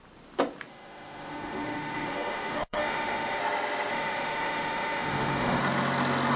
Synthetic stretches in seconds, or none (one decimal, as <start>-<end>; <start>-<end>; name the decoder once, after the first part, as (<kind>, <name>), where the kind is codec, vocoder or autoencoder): 0.7-3.4 (autoencoder, DAC-VAE); 3.9-5.6